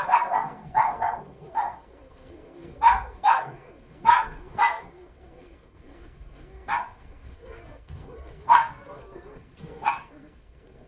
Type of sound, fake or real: fake